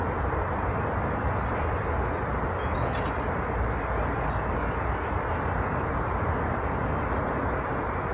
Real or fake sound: real